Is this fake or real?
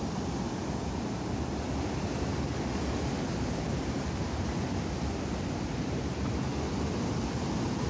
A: real